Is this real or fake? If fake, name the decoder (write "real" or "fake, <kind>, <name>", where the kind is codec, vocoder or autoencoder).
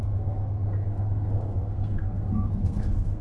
fake, codec, SNAC